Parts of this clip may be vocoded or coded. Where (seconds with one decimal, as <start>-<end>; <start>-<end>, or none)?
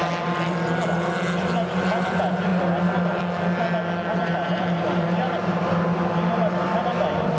4.2-5.6